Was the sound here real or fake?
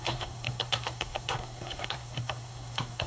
fake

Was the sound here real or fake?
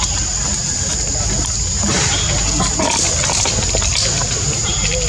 real